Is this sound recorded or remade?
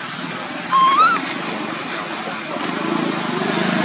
recorded